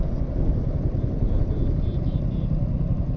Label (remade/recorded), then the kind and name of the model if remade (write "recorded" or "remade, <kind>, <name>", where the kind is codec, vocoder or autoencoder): recorded